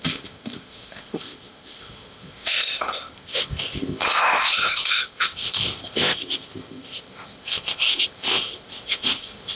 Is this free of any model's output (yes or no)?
no